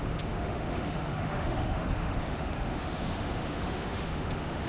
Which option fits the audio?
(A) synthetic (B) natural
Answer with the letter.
A